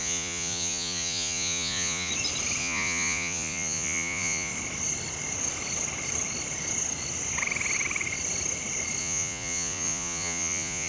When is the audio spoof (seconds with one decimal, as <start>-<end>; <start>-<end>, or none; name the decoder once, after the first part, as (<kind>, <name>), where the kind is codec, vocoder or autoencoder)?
0.0-2.1 (vocoder, Vocos); 2.6-4.5; 9.0-10.9